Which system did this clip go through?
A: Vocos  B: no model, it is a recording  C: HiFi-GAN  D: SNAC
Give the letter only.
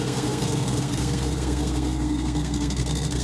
D